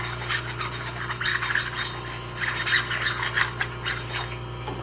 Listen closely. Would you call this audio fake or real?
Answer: real